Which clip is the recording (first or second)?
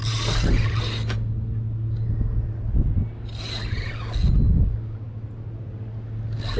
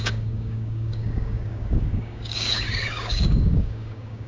first